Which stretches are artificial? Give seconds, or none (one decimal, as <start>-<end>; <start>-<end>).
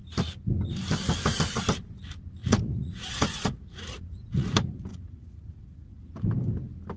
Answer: 2.4-4.5; 4.9-6.0